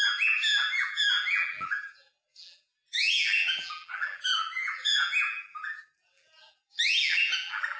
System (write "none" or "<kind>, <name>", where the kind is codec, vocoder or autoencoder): vocoder, BigVGAN v2